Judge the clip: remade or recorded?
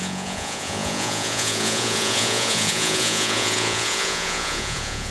remade